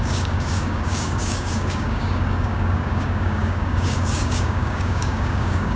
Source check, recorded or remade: remade